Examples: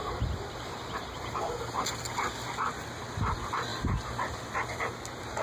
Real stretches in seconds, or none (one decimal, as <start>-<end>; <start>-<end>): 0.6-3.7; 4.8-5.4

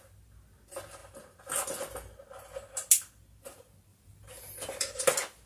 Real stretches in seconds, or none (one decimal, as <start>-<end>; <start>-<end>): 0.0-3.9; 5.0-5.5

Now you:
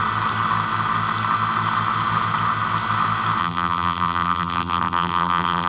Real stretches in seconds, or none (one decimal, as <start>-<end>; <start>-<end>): 0.0-3.4